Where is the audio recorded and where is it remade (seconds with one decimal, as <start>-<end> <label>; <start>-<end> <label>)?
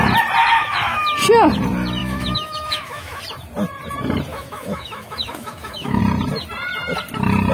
0.0-0.4 recorded; 0.4-1.0 remade; 1.0-2.0 recorded; 2.0-3.2 remade; 3.2-4.3 recorded; 4.3-6.0 remade; 6.0-7.5 recorded